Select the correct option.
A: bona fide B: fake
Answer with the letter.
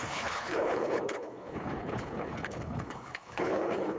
B